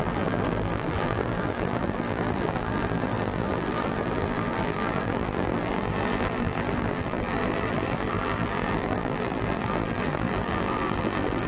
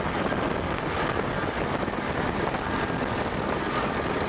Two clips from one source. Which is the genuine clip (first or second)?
second